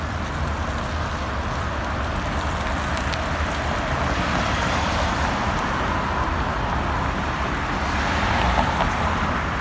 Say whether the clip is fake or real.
real